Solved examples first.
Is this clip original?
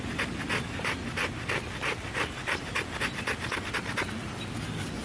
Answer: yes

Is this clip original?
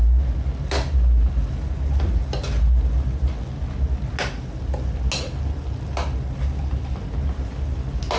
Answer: yes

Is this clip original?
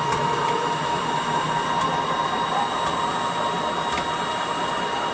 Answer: yes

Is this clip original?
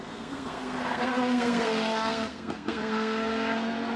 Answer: no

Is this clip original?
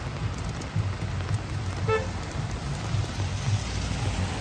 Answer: yes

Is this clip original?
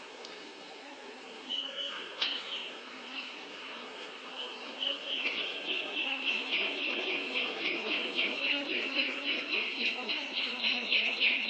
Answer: no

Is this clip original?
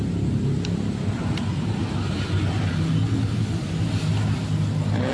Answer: yes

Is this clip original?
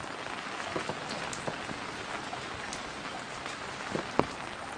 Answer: yes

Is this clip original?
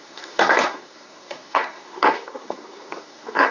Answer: no